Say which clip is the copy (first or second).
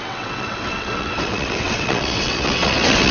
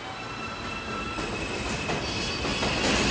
first